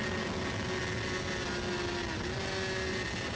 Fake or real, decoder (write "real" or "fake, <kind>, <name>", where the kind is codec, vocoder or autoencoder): real